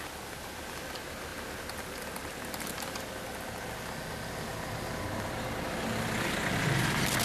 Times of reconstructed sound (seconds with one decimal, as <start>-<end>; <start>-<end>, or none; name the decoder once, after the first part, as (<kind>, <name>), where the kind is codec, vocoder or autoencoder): none